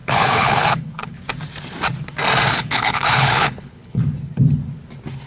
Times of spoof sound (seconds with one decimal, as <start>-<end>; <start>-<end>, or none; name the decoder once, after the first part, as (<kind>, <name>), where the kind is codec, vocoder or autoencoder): 0.0-1.2 (codec, HILCodec); 2.5-4.0